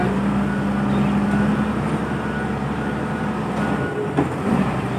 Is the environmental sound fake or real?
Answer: real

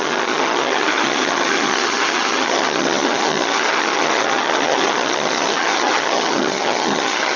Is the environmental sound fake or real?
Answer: fake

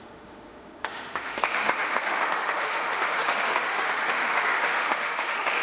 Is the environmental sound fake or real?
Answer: fake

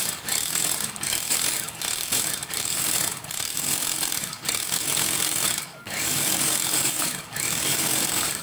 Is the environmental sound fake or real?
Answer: fake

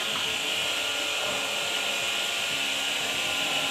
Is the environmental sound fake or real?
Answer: real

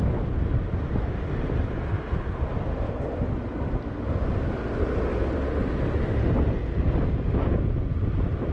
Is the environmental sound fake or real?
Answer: real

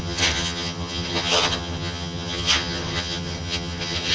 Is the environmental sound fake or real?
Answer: fake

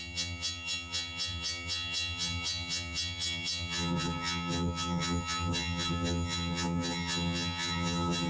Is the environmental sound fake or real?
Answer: fake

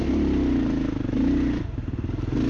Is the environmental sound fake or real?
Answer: real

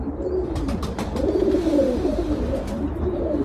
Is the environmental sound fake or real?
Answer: fake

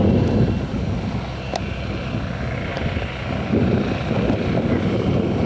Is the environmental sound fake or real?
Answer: real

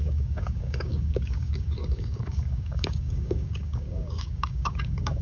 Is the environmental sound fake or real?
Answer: fake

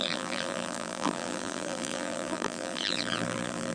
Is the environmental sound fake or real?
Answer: fake